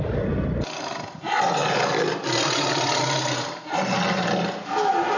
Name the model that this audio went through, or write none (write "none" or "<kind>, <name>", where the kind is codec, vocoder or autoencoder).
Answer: none